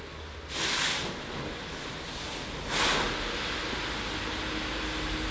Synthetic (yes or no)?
no